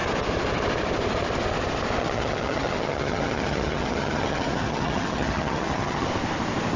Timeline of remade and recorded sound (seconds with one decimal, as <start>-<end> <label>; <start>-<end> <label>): 0.0-2.0 recorded; 2.0-6.1 remade; 6.1-6.8 recorded